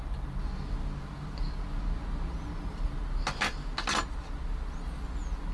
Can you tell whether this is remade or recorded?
recorded